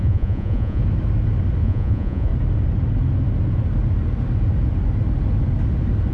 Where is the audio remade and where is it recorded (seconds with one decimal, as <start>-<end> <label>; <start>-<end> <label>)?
0.0-0.8 remade; 0.8-1.6 recorded; 1.6-2.3 remade; 2.3-6.1 recorded